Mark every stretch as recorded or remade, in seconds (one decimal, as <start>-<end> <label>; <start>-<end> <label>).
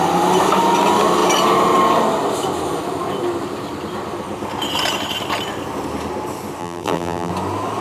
0.0-6.6 recorded; 6.6-7.3 remade; 7.3-7.8 recorded